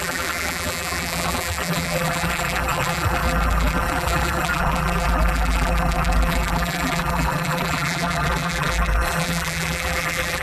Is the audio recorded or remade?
remade